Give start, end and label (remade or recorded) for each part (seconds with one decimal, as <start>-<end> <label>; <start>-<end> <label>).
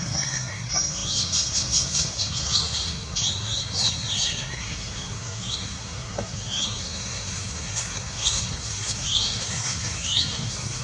0.0-10.8 remade